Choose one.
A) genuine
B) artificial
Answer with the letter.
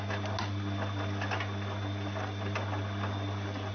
A